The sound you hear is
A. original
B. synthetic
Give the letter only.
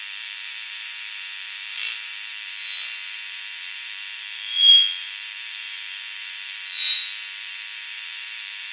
B